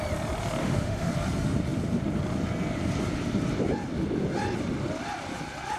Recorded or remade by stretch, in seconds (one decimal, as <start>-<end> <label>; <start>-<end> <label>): 0.0-0.6 recorded; 0.6-1.1 remade; 1.1-5.8 recorded